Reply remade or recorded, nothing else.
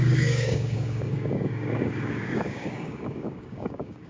remade